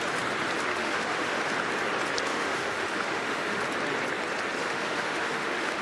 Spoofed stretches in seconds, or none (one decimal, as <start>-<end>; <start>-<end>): 0.7-1.4; 2.3-3.6; 4.6-5.8